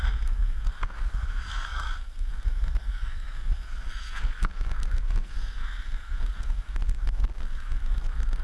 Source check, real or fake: fake